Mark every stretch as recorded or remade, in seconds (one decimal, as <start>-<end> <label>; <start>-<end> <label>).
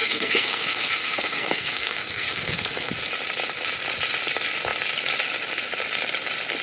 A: 0.0-2.9 remade; 2.9-6.6 recorded